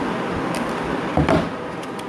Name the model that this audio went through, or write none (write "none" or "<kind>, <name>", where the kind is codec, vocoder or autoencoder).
none